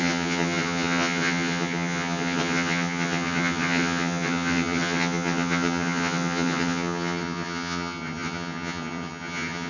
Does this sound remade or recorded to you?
remade